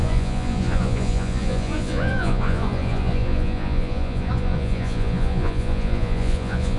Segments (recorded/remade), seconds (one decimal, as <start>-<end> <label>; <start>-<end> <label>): 0.0-6.8 remade